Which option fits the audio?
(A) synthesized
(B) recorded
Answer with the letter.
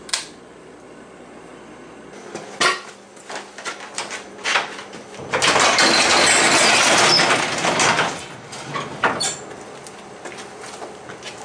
B